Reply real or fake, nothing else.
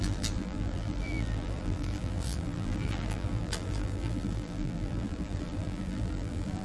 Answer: fake